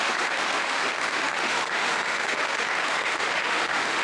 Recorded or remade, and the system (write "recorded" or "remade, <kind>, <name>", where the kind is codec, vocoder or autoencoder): remade, autoencoder, DAC-VAE